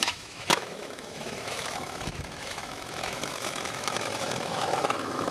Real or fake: fake